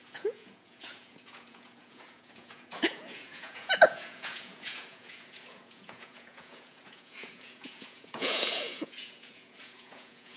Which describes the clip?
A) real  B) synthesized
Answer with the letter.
B